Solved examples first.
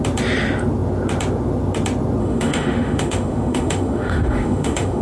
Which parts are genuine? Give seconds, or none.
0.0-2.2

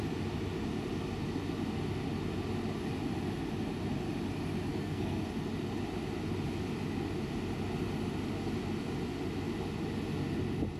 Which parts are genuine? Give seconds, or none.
0.0-4.7; 5.2-10.8